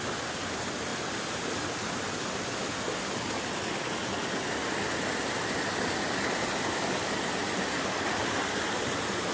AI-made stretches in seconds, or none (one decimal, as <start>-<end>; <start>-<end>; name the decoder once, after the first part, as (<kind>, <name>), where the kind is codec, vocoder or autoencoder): none